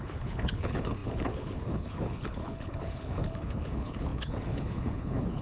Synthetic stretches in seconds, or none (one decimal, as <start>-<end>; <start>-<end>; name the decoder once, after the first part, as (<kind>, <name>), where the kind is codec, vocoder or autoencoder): 0.0-5.4 (codec, HILCodec)